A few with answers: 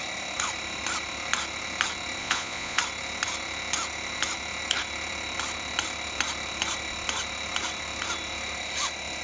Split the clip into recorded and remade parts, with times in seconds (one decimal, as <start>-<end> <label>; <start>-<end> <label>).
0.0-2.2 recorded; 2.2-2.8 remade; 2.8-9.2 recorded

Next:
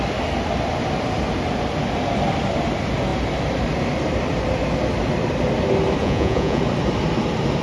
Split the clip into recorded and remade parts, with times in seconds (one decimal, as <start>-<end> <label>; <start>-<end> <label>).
0.0-6.0 recorded; 6.0-6.6 remade; 6.6-7.6 recorded

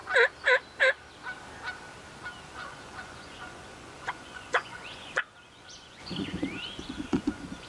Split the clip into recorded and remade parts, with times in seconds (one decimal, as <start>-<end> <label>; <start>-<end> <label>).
0.0-2.4 recorded; 2.4-7.7 remade

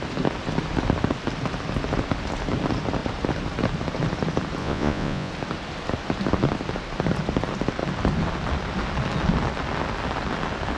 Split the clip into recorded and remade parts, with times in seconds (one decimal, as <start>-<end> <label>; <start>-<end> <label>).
0.0-4.6 recorded; 4.6-5.3 remade; 5.3-10.8 recorded